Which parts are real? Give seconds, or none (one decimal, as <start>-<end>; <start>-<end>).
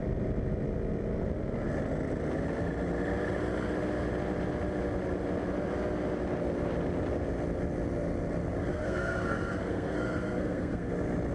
0.0-8.7; 10.9-11.3